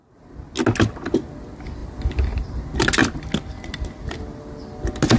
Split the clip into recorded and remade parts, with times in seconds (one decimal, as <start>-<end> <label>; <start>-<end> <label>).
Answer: 0.0-5.2 recorded